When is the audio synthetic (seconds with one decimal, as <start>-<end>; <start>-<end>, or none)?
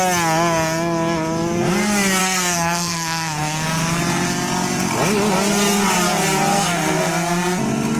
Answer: 2.2-4.0; 6.5-7.1